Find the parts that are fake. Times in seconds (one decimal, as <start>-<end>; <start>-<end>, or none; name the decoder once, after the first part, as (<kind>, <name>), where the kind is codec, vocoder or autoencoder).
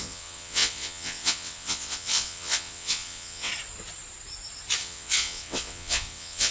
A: 0.0-3.5 (vocoder, WaveNeXt); 4.8-6.5